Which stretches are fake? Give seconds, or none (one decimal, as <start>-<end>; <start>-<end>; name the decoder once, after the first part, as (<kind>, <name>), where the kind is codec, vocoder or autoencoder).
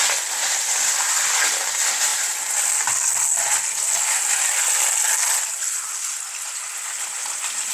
none